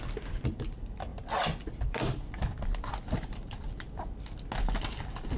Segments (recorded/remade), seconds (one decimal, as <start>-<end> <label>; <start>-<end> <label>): 0.0-1.1 recorded; 1.1-4.1 remade; 4.1-5.4 recorded